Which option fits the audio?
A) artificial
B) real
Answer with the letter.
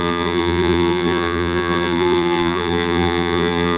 A